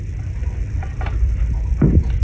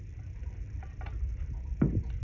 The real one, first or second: first